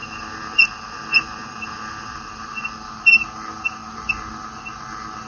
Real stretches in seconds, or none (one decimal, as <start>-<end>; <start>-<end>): 0.0-5.3